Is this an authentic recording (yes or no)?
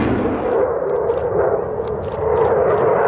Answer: yes